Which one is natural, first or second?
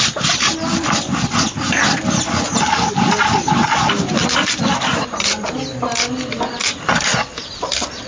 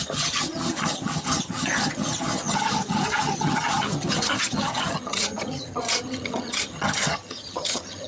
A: first